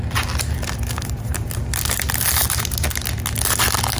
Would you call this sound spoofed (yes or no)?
no